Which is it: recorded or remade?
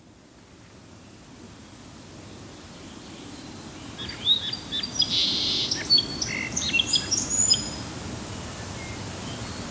recorded